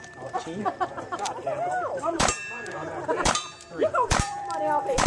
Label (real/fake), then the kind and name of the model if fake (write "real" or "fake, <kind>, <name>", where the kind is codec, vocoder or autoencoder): fake, vocoder, BigVGAN v2